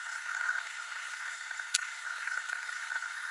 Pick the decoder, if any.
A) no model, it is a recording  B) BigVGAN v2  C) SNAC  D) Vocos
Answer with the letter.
C